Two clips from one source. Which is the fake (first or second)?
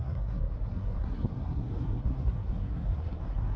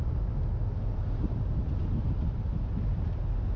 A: first